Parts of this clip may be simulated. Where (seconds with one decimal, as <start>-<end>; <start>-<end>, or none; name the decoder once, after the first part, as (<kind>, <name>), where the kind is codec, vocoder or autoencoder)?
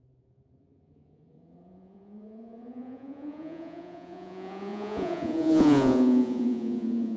0.0-7.2 (vocoder, Vocos)